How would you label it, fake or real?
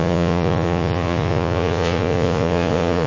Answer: fake